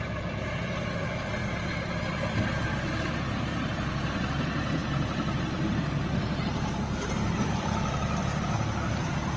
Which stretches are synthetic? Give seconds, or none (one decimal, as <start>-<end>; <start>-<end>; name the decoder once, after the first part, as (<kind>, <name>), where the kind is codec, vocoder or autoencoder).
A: 0.0-9.4 (vocoder, BigVGAN v2)